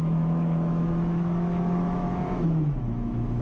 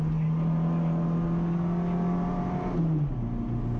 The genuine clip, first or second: second